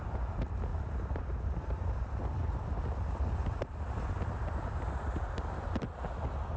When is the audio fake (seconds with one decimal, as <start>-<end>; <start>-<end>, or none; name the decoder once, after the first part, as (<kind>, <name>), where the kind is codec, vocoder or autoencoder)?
0.7-4.6 (vocoder, BigVGAN v2)